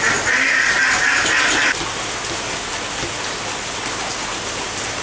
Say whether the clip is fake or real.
real